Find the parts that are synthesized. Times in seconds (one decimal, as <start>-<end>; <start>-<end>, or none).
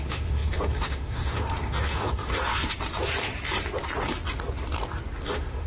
0.0-2.5; 5.2-5.7